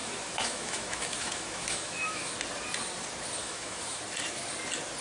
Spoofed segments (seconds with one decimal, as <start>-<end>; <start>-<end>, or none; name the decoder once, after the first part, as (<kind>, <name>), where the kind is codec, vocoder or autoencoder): 0.0-2.3 (autoencoder, DAC-VAE); 3.4-4.0